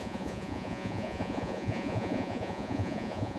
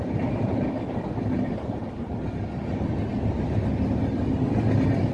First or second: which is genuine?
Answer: second